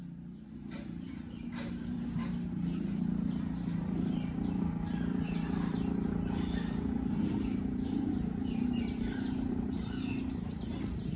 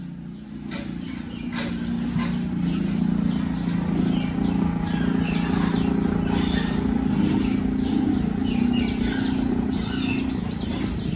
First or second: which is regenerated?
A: first